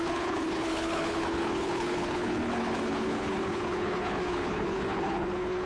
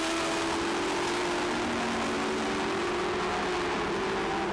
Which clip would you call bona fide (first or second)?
second